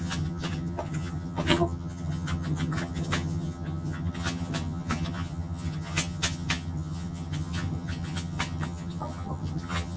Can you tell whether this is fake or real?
fake